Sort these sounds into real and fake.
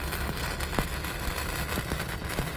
real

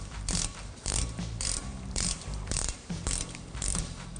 fake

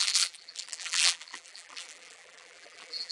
fake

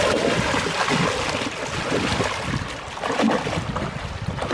real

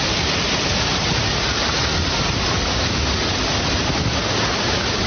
real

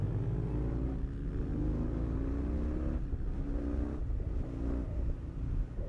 real